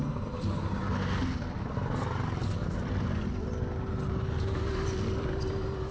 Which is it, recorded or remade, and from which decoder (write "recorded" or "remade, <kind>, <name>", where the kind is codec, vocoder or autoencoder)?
recorded